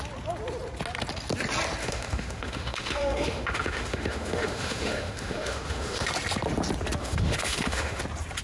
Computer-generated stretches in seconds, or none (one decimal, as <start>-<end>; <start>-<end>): 1.8-6.1; 7.0-8.0